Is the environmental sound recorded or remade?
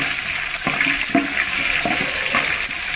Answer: recorded